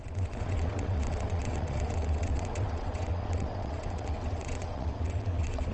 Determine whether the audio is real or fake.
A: fake